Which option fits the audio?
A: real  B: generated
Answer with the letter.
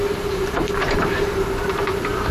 B